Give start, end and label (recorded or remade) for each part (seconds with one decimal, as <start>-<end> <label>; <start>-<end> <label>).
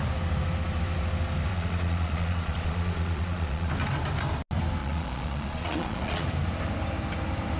0.0-1.5 recorded; 1.5-3.7 remade; 3.7-4.8 recorded; 4.8-6.2 remade; 6.2-7.6 recorded